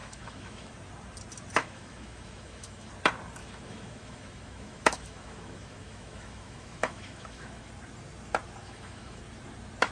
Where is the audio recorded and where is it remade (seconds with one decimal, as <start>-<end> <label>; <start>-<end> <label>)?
0.0-0.7 remade; 0.7-1.6 recorded; 1.6-2.9 remade; 2.9-3.4 recorded; 3.4-7.7 remade; 7.7-8.6 recorded; 8.6-9.2 remade; 9.2-9.9 recorded